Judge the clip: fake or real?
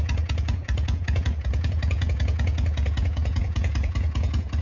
fake